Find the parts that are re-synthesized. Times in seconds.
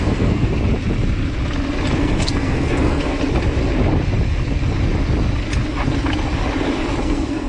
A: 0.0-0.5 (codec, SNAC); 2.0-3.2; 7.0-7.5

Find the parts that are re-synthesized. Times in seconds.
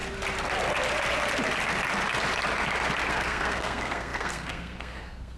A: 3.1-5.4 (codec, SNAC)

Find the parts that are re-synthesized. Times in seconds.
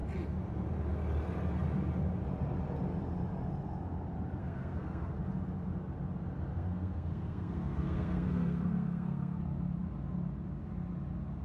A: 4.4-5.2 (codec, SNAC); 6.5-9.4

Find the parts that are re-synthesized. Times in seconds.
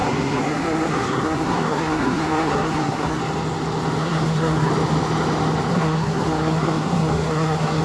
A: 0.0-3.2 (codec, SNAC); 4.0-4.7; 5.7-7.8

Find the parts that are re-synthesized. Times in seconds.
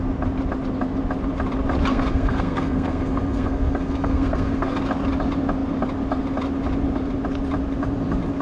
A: 1.9-4.8 (codec, SNAC)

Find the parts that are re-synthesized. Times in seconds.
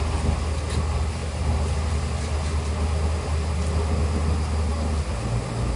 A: none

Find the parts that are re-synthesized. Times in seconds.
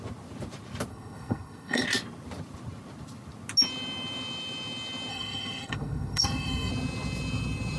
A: 0.9-1.8 (codec, SNAC); 5.1-6.7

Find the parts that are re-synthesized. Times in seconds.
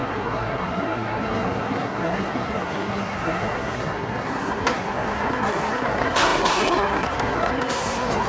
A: 0.0-8.3 (codec, SNAC)